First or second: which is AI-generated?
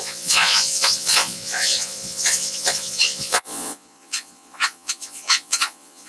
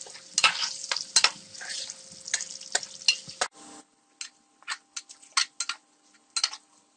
first